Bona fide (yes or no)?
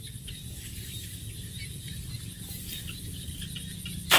yes